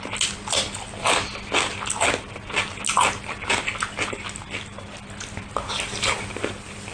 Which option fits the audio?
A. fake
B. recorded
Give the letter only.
B